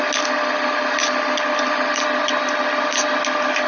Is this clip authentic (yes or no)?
yes